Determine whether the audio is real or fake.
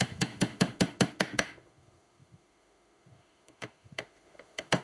fake